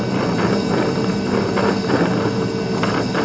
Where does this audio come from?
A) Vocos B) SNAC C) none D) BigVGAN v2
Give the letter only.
C